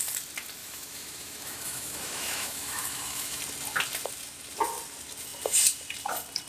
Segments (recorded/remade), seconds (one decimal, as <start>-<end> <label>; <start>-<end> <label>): 0.0-0.6 recorded; 0.6-3.4 remade; 3.4-6.5 recorded